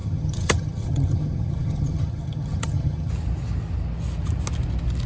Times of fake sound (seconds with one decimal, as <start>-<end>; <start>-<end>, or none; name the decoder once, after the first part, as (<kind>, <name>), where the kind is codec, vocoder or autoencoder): 0.0-3.1 (vocoder, HiFi-GAN)

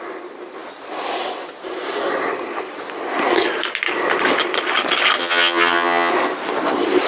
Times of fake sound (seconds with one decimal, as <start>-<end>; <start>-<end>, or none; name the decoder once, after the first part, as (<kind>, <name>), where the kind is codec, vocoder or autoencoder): 5.2-6.1 (vocoder, HiFi-GAN)

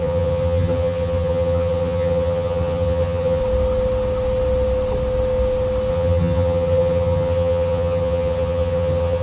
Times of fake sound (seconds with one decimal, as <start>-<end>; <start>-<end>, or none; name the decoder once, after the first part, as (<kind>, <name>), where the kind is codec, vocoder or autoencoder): 0.0-3.4 (vocoder, HiFi-GAN); 5.9-9.2

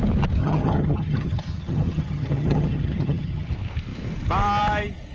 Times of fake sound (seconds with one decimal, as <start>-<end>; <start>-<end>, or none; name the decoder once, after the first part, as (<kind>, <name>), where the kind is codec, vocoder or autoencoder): 0.4-3.5 (vocoder, HiFi-GAN)

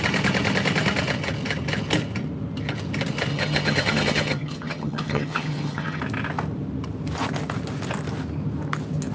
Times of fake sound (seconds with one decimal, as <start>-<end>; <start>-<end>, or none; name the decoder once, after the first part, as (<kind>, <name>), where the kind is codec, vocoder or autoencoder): 3.3-6.0 (vocoder, HiFi-GAN)

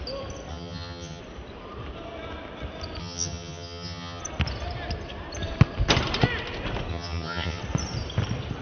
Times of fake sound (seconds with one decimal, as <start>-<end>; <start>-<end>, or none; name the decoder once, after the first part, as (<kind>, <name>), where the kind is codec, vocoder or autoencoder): 0.5-1.2 (vocoder, HiFi-GAN); 3.0-4.2; 6.9-7.6